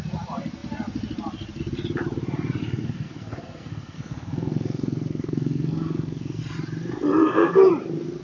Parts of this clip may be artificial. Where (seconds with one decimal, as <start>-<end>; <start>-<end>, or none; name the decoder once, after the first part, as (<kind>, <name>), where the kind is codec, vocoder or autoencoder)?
2.6-6.4 (codec, SNAC); 7.2-7.7